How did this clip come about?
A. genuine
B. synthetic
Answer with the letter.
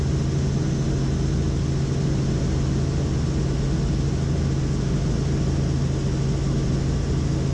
A